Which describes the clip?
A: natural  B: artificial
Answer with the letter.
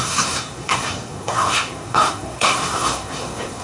B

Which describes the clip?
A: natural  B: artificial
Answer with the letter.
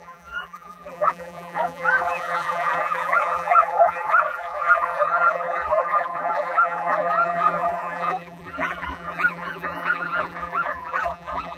B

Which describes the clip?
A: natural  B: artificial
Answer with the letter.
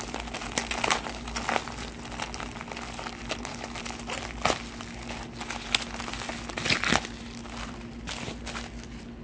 A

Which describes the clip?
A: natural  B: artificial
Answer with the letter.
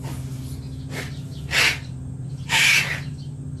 A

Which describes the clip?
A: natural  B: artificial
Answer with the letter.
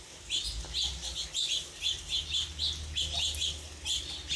A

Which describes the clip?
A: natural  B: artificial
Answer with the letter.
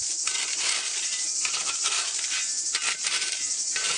A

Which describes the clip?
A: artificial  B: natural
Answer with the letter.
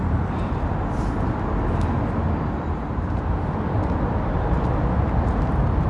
B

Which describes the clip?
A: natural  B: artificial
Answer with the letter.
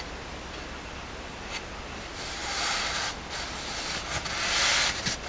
A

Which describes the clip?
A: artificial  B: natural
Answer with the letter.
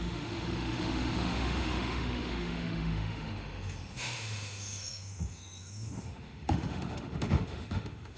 A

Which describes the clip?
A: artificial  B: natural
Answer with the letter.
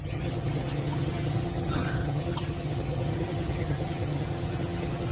A